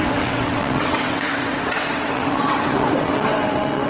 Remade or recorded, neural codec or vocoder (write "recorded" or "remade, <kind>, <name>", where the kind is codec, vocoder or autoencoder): remade, vocoder, WaveNeXt